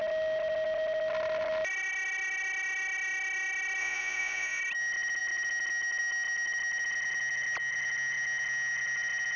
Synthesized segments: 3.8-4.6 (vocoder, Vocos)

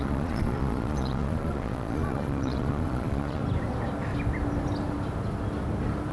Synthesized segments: 0.0-3.4 (vocoder, Vocos)